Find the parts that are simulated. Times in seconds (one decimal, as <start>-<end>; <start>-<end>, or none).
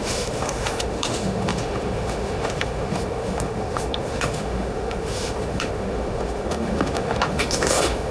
0.0-8.1